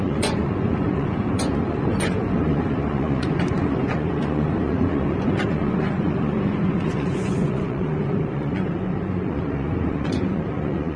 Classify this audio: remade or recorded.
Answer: remade